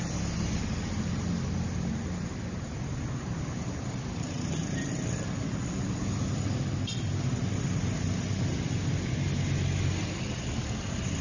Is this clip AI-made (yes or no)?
no